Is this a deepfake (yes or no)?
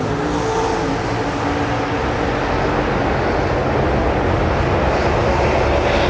no